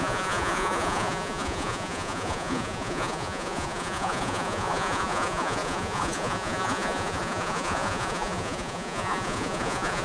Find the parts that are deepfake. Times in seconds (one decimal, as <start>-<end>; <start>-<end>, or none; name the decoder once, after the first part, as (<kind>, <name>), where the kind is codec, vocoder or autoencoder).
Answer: 0.0-10.0 (vocoder, Vocos)